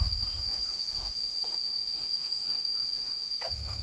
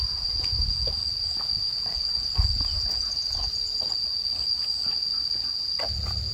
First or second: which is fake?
first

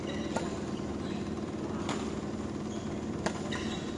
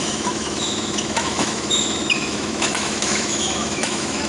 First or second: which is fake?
second